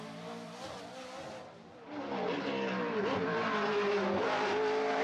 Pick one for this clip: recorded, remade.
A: recorded